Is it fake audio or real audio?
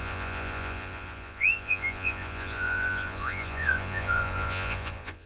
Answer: fake